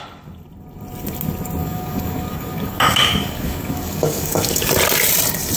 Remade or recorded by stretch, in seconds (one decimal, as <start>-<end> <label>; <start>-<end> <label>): 0.0-1.6 recorded; 1.6-4.7 remade; 4.7-5.6 recorded